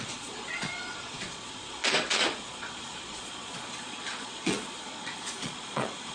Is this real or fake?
fake